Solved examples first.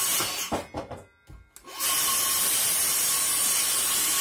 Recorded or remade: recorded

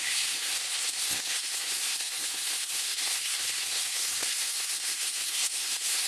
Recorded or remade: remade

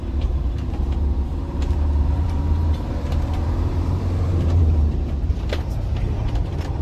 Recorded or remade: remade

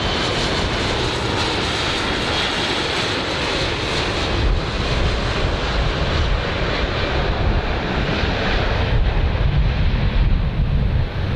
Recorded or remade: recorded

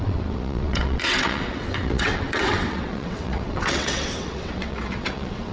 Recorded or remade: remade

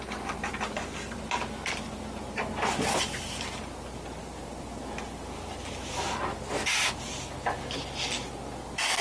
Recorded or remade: recorded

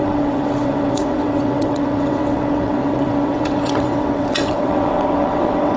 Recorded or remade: remade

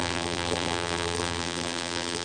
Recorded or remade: remade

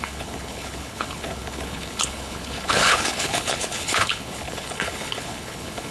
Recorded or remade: remade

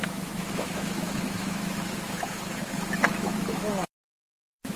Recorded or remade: remade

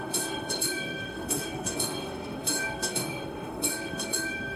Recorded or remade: remade